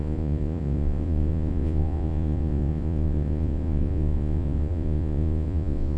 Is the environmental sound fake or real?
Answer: fake